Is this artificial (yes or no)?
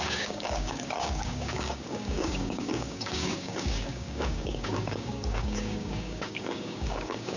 yes